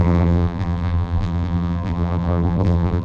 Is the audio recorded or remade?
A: remade